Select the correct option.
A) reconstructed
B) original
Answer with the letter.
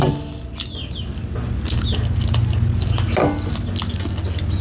B